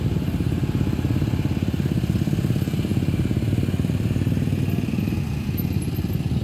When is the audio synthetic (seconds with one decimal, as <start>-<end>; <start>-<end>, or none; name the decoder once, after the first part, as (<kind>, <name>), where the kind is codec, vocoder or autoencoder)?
none